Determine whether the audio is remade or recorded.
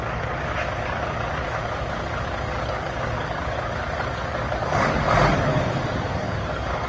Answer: remade